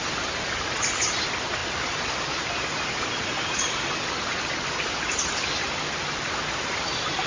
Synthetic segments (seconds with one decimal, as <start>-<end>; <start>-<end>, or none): none